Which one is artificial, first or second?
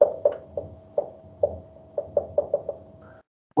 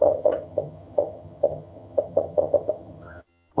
second